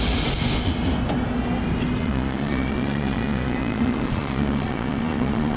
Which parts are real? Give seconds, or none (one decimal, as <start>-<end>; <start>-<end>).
0.0-2.0